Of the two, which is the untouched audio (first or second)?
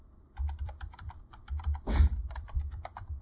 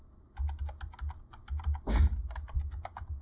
second